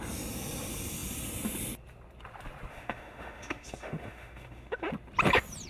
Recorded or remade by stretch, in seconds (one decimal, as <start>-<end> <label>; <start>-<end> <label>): 0.0-2.7 recorded; 2.7-4.9 remade; 4.9-5.7 recorded